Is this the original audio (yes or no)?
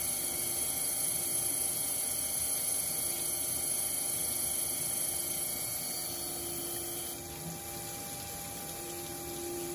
yes